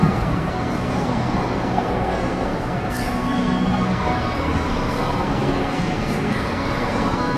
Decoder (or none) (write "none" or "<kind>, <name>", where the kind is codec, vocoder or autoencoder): codec, SNAC